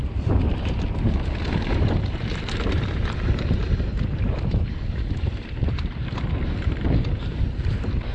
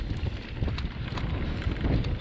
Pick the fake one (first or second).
first